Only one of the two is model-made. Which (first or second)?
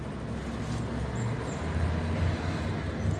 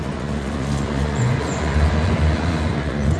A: second